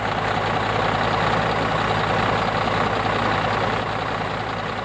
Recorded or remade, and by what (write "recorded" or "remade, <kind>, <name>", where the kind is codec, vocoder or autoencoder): recorded